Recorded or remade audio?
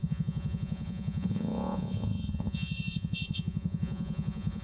remade